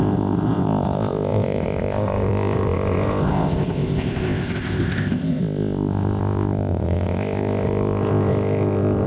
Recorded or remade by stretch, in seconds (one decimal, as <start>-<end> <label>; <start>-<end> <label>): 0.0-9.1 remade